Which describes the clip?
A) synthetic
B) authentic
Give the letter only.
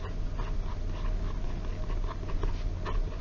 B